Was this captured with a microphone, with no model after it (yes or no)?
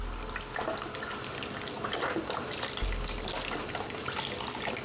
yes